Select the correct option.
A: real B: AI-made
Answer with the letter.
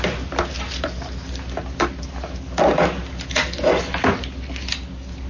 B